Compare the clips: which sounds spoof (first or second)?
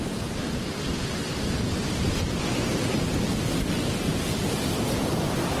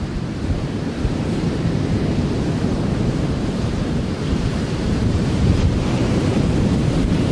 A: second